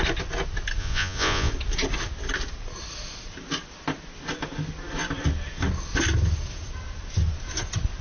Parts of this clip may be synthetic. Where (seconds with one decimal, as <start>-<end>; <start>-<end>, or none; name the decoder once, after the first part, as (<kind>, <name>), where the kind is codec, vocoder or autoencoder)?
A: 0.8-1.5 (vocoder, Vocos)